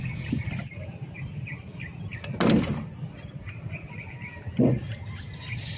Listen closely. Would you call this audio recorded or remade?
recorded